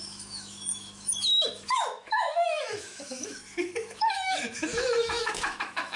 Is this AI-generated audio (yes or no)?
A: yes